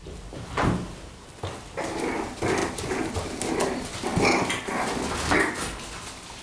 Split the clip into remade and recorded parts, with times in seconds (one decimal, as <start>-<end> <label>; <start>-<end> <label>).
0.0-6.4 recorded